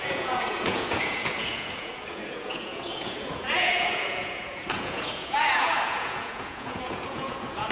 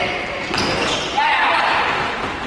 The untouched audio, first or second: second